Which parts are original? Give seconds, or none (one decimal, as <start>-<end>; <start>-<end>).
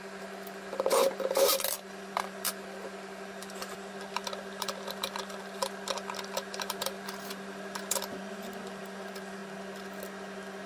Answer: 9.4-10.7